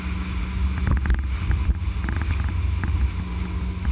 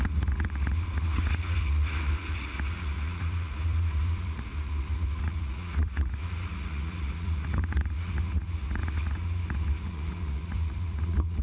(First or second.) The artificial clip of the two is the second